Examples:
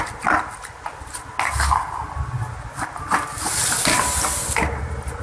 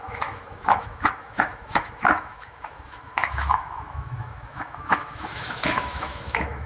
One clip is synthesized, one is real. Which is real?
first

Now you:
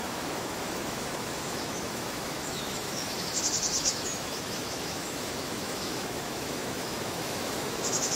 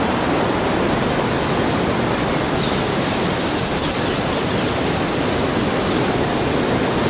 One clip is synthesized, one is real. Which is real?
second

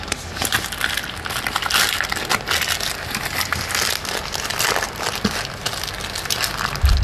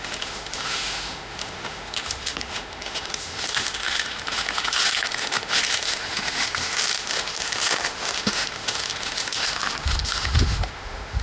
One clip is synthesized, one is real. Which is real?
first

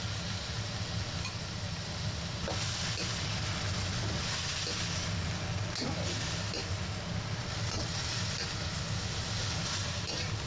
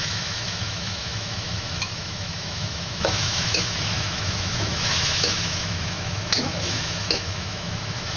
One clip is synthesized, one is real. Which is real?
first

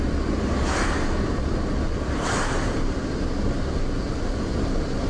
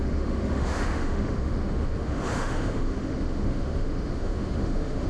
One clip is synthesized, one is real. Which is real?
first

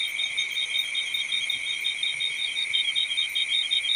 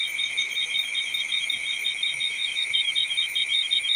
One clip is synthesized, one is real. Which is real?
first